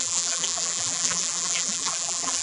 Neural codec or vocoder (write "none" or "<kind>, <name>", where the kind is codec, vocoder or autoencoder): vocoder, BigVGAN v2